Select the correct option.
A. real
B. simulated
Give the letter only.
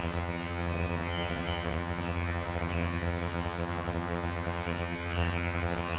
B